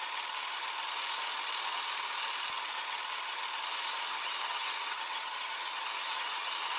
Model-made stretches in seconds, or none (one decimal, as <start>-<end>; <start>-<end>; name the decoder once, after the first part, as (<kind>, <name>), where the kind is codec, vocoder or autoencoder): 4.1-6.8 (vocoder, HiFi-GAN)